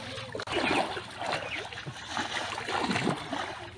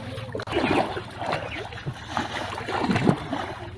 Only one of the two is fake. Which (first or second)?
first